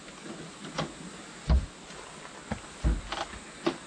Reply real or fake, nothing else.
real